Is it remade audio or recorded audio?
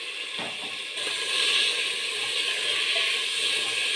recorded